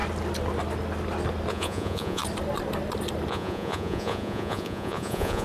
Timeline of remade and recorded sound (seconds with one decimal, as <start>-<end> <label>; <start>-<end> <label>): 0.0-1.5 recorded; 1.5-2.2 remade; 2.2-3.3 recorded; 3.3-5.4 remade

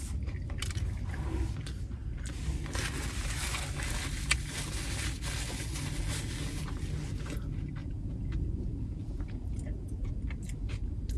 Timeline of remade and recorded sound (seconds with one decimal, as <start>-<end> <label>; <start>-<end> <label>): 0.0-7.8 recorded; 7.8-10.1 remade; 10.1-11.2 recorded

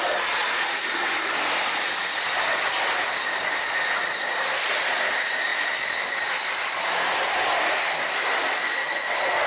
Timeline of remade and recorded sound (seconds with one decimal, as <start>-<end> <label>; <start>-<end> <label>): 0.0-9.5 recorded

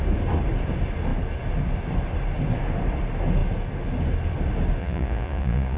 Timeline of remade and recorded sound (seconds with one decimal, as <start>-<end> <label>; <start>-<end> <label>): 0.0-4.8 recorded; 4.8-5.8 remade